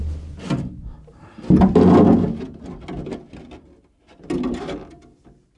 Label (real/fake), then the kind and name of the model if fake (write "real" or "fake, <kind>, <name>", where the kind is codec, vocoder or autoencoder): real